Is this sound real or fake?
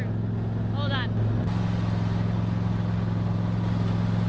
real